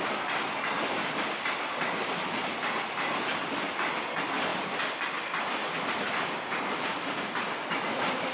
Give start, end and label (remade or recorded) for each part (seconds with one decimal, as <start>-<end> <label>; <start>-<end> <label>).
0.0-4.5 remade; 4.5-5.2 recorded; 5.2-6.9 remade; 6.9-7.4 recorded; 7.4-8.3 remade